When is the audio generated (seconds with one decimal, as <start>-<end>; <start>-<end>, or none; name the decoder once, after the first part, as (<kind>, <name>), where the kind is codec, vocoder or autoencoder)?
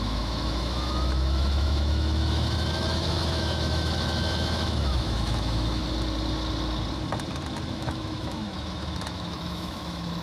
0.0-5.8 (autoencoder, DAC-VAE); 7.7-10.2